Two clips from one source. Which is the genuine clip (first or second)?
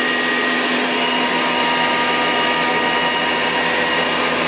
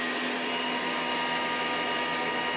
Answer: second